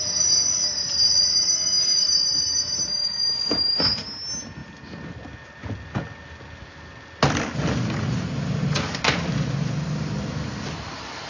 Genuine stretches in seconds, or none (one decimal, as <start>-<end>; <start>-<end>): 0.0-11.3